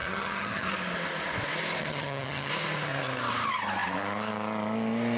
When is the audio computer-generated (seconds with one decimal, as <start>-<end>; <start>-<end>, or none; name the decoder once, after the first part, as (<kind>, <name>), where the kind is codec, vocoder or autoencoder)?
0.0-0.7 (vocoder, HiFi-GAN); 1.8-2.5